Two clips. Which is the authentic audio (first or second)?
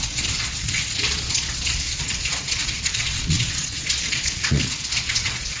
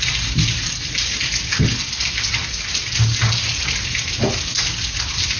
second